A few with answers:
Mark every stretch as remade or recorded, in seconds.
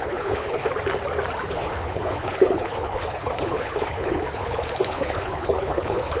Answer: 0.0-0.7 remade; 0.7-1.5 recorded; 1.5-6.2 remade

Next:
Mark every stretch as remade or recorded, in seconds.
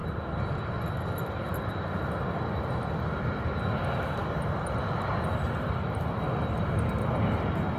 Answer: 0.0-4.2 recorded; 4.2-5.2 remade; 5.2-7.8 recorded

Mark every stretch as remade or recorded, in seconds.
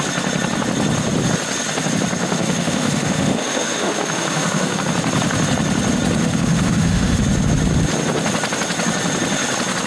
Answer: 0.0-2.2 recorded; 2.2-4.8 remade; 4.8-6.2 recorded; 6.2-7.2 remade; 7.2-9.9 recorded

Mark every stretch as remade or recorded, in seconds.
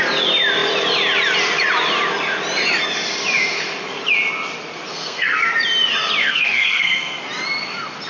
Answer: 0.0-4.9 recorded; 4.9-5.5 remade; 5.5-6.2 recorded; 6.2-7.2 remade; 7.2-8.1 recorded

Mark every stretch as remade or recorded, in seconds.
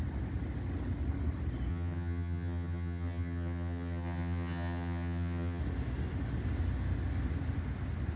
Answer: 0.0-1.7 recorded; 1.7-5.6 remade; 5.6-8.2 recorded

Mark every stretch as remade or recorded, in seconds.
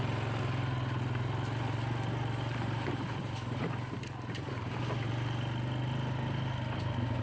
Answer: 0.0-2.5 recorded; 2.5-4.8 remade; 4.8-7.2 recorded